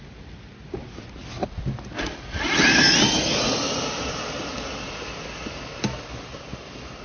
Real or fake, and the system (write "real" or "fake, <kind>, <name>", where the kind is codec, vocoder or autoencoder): real